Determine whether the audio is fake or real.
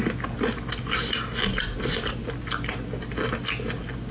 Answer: real